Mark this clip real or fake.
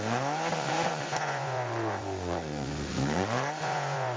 fake